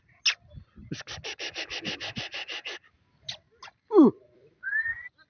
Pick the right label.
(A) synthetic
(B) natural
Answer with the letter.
B